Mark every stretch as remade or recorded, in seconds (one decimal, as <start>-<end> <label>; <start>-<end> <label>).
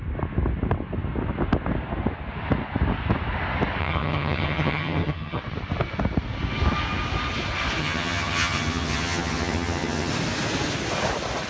0.0-3.8 recorded; 3.8-5.4 remade; 5.4-7.8 recorded; 7.8-10.1 remade; 10.1-11.5 recorded